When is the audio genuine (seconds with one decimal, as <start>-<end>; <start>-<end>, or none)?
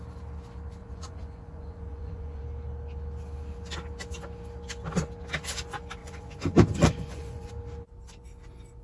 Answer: 0.0-0.8; 2.4-6.0; 7.5-8.8